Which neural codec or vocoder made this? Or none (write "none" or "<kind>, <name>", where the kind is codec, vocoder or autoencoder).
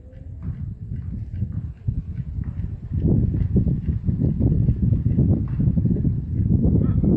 none